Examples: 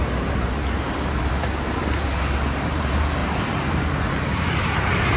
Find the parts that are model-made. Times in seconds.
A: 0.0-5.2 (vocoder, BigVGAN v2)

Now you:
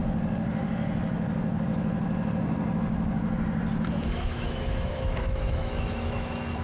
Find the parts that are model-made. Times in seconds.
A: 4.0-6.6 (autoencoder, DAC-VAE)

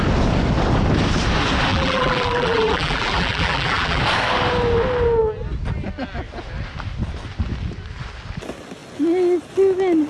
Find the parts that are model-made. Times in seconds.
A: 1.7-4.0 (vocoder, BigVGAN v2)

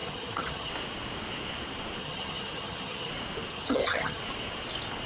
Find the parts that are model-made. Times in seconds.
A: 0.0-0.7 (vocoder, HiFi-GAN); 2.0-3.1; 3.5-4.2